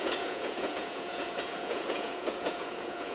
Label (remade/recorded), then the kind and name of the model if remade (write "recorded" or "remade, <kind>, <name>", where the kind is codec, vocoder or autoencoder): remade, vocoder, Vocos